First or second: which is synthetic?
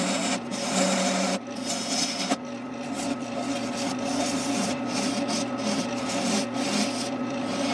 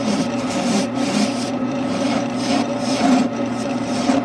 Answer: second